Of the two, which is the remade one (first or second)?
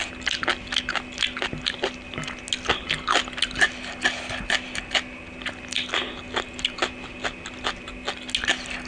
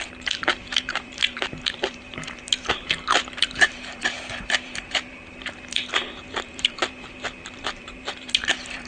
second